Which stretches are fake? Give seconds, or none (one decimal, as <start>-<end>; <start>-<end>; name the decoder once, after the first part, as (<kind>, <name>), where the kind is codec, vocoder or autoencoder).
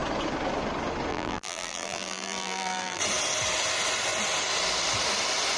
1.1-3.0 (vocoder, BigVGAN v2)